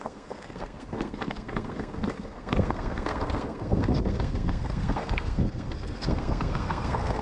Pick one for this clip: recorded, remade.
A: remade